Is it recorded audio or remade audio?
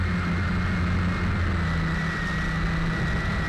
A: recorded